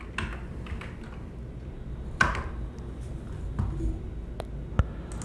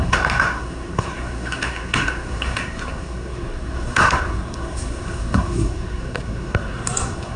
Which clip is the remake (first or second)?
second